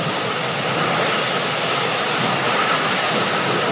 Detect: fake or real real